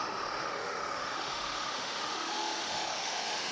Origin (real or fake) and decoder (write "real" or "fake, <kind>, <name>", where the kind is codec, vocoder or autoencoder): fake, autoencoder, DAC-VAE